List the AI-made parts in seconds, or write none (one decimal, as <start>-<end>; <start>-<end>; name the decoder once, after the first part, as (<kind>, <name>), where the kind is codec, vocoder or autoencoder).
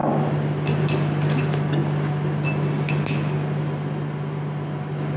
none